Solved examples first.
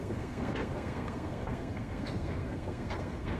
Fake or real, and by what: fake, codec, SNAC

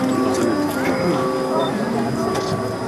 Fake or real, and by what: real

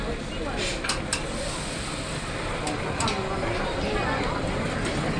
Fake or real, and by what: real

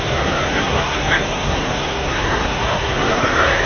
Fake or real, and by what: fake, codec, SNAC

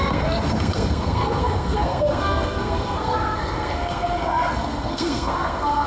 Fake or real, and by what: fake, codec, SNAC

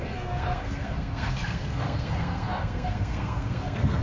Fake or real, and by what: fake, codec, SNAC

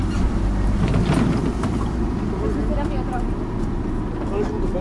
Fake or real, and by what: real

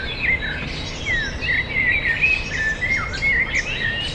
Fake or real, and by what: real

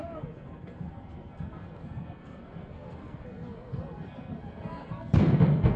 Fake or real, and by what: fake, codec, SNAC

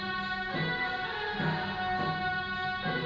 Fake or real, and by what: real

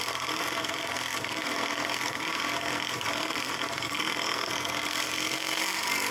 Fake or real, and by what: fake, codec, SNAC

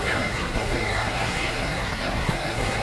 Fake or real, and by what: fake, codec, SNAC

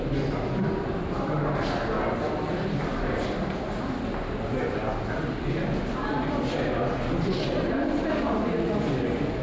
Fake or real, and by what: real